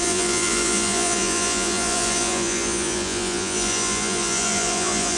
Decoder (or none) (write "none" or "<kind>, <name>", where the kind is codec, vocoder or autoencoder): vocoder, Vocos